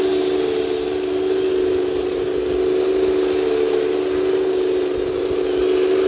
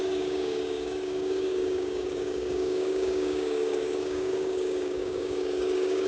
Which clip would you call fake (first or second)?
second